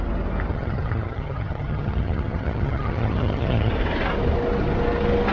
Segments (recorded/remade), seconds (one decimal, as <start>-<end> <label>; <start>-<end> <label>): 0.0-0.5 recorded; 0.5-3.7 remade; 3.7-5.3 recorded